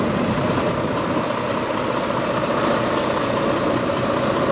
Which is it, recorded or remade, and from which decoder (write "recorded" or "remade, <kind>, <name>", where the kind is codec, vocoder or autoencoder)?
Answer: recorded